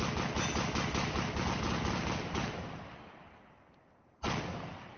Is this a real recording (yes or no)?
yes